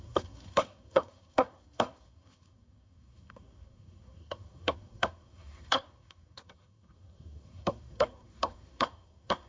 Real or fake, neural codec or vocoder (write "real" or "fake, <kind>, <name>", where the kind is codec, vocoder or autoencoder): fake, codec, SNAC